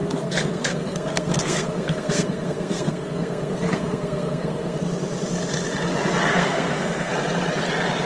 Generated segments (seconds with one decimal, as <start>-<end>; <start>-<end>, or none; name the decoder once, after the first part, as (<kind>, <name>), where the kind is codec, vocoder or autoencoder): 0.0-4.8 (codec, SNAC); 6.3-7.1